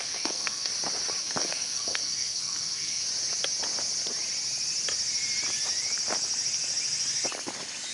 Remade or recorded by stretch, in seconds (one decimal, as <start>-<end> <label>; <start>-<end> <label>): 0.0-0.7 remade; 0.7-1.2 recorded; 1.2-3.0 remade; 3.0-7.9 recorded